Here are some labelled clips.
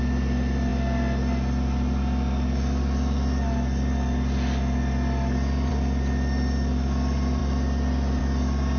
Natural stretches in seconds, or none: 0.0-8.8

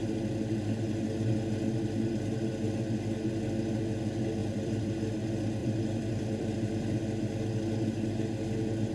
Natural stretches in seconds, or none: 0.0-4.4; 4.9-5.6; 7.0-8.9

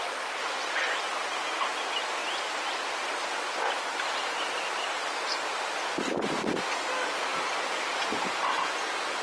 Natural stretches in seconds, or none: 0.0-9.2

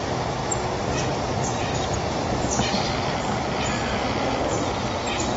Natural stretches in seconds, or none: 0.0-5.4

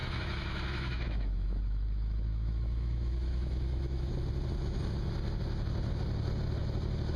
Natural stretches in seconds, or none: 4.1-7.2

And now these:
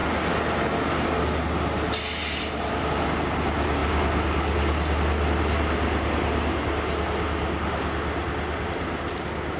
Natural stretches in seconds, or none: 0.0-9.6